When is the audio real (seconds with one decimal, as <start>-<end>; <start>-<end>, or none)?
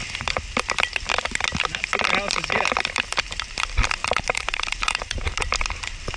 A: 0.0-4.0; 5.4-6.2